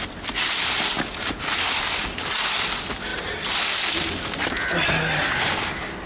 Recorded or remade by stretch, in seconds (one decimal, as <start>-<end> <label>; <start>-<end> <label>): 0.0-6.1 recorded